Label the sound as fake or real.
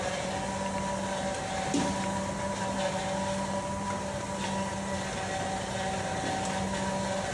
real